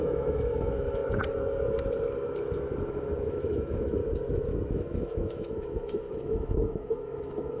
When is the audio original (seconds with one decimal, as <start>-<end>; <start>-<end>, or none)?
1.0-2.9; 4.0-4.7